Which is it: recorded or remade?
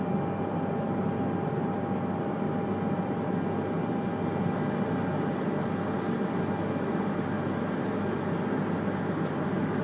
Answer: recorded